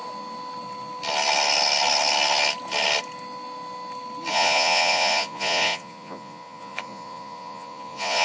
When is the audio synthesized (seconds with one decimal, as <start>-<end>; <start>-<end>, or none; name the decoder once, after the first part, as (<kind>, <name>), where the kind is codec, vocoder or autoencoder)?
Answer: 4.3-8.2 (vocoder, Vocos)